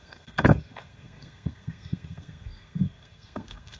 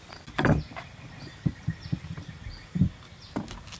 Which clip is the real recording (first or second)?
second